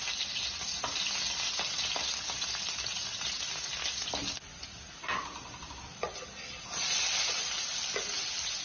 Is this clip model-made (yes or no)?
no